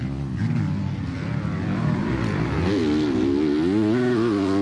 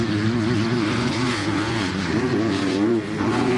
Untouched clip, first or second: first